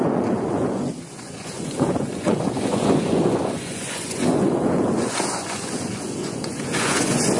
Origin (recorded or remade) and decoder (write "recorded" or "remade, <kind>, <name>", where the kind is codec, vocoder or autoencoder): remade, vocoder, Vocos